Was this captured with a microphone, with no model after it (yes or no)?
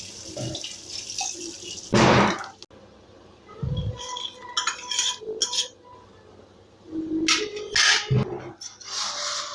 yes